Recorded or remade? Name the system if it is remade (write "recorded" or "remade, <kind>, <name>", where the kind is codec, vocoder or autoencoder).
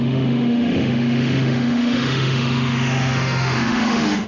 remade, autoencoder, DAC-VAE